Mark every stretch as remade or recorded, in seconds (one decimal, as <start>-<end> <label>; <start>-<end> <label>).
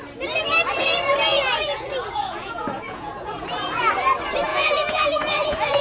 0.0-1.3 recorded; 1.3-3.9 remade; 3.9-4.5 recorded; 4.5-5.8 remade